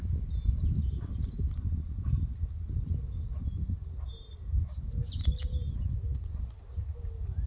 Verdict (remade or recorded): recorded